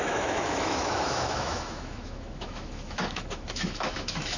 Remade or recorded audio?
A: remade